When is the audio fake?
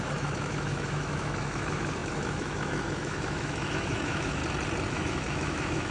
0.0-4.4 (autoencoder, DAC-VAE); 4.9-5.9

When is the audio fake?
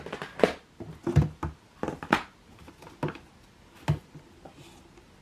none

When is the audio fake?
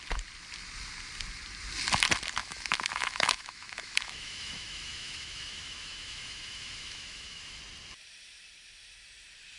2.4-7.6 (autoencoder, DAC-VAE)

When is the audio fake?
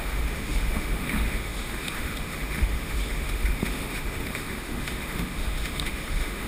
0.0-6.5 (autoencoder, DAC-VAE)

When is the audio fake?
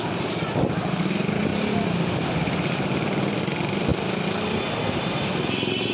none